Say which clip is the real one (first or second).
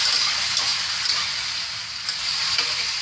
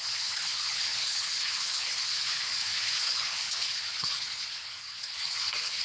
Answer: first